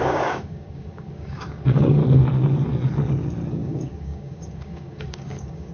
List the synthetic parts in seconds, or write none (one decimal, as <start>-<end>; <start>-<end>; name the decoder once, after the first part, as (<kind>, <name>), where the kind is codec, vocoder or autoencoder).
0.0-2.0 (codec, DAC); 3.5-5.7